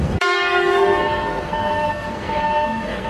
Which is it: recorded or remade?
remade